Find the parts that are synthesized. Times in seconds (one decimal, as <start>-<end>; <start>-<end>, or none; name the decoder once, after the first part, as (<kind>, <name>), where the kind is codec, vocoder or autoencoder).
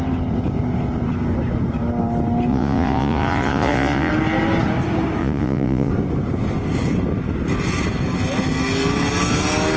2.5-4.1 (vocoder, Vocos); 5.2-5.9